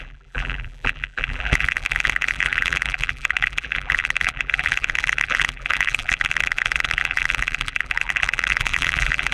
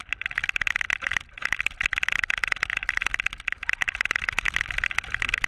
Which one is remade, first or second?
first